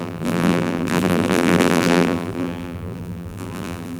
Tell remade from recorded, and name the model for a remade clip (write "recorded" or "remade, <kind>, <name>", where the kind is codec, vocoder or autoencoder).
remade, vocoder, BigVGAN v2